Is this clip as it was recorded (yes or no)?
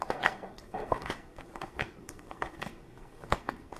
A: no